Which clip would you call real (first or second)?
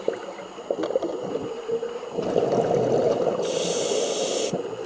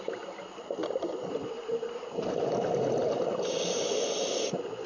first